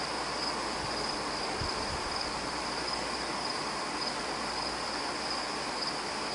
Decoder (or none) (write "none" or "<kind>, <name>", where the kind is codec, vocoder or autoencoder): none